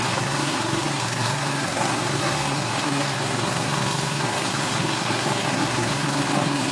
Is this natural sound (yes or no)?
no